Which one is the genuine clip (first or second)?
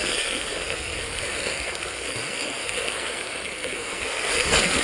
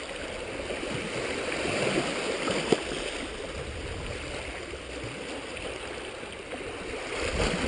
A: second